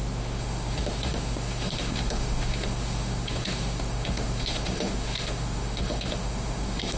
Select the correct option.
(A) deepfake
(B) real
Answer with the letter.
A